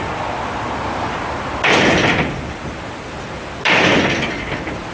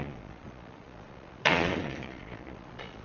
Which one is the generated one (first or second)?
second